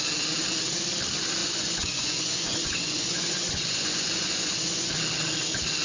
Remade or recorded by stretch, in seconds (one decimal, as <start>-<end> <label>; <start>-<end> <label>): 0.0-1.4 recorded; 1.4-4.9 remade; 4.9-5.8 recorded